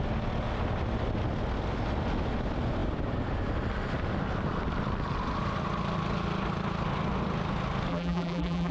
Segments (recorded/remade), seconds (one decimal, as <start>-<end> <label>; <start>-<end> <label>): 0.0-7.9 recorded; 7.9-8.7 remade